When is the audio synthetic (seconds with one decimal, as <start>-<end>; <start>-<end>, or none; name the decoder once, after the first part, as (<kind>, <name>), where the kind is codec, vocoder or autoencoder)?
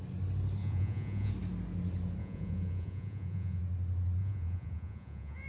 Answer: 0.6-1.3 (vocoder, Vocos); 2.2-3.6; 4.2-5.5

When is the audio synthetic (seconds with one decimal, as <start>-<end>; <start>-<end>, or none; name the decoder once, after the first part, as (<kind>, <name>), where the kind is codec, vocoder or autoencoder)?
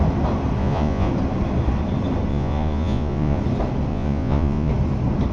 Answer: 0.6-1.1 (vocoder, Vocos); 2.3-3.4; 3.9-4.7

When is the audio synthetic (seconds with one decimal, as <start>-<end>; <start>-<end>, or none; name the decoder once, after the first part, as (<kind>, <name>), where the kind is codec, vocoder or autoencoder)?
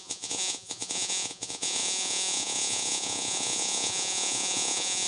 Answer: 0.0-5.1 (vocoder, Vocos)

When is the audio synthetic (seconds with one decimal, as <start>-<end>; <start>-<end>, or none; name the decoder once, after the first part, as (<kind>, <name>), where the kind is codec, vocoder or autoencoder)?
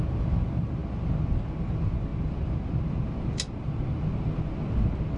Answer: none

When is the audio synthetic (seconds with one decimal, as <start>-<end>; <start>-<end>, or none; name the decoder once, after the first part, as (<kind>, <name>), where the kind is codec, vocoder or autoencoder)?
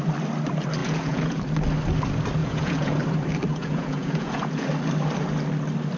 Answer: 0.8-1.4 (vocoder, Vocos); 2.4-3.0; 3.5-4.7